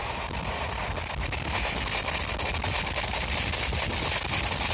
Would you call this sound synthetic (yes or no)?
no